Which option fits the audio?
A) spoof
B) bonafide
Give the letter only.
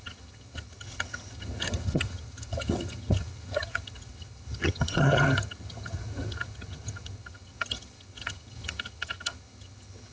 A